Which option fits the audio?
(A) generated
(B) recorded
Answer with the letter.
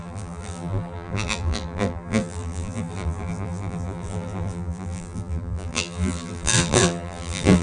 A